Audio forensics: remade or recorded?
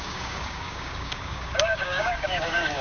remade